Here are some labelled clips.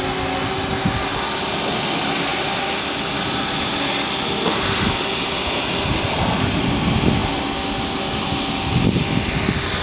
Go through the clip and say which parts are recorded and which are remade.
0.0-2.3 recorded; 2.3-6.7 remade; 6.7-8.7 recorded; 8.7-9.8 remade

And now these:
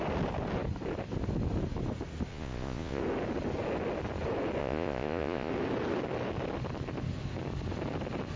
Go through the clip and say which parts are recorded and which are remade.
0.0-2.3 recorded; 2.3-3.0 remade; 3.0-4.6 recorded; 4.6-5.5 remade; 5.5-8.4 recorded

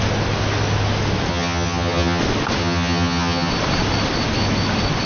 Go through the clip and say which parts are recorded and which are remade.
0.0-1.3 recorded; 1.3-2.2 remade; 2.2-2.6 recorded; 2.6-3.5 remade; 3.5-5.1 recorded

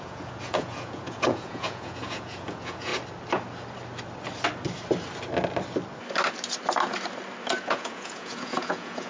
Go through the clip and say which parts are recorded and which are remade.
0.0-2.9 remade; 2.9-7.6 recorded; 7.6-9.1 remade

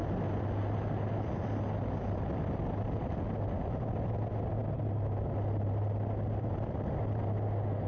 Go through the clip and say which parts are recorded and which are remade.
0.0-7.9 recorded

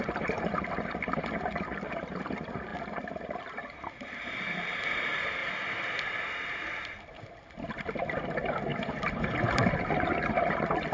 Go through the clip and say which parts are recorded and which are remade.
0.0-2.7 remade; 2.7-3.5 recorded; 3.5-5.4 remade; 5.4-7.7 recorded; 7.7-10.9 remade

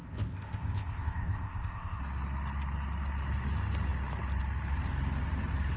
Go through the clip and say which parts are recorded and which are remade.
0.0-2.0 remade; 2.0-5.8 recorded

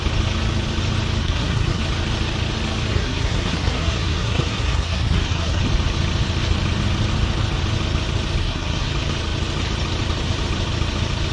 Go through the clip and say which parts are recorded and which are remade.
0.0-1.2 recorded; 1.2-1.8 remade; 1.8-2.9 recorded; 2.9-5.6 remade; 5.6-8.4 recorded; 8.4-8.9 remade; 8.9-11.3 recorded